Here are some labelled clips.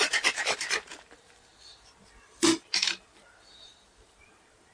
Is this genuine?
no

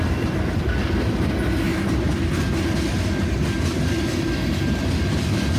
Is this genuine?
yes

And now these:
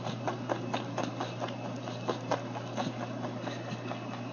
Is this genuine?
yes